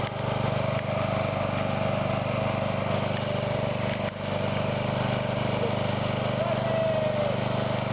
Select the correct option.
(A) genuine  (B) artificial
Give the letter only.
A